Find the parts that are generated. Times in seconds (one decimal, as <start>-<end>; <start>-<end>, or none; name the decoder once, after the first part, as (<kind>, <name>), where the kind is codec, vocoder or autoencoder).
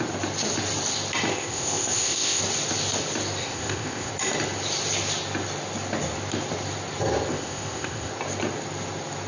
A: 1.3-2.4 (codec, ZipCodec); 3.4-4.1; 7.3-8.1